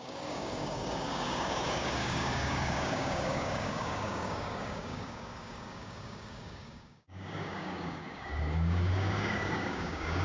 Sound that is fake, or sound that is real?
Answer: fake